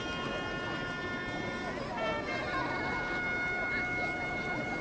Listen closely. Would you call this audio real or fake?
real